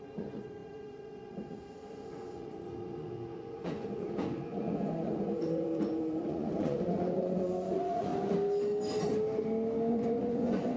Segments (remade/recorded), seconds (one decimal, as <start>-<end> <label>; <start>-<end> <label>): 0.0-8.1 remade; 8.1-9.9 recorded; 9.9-10.8 remade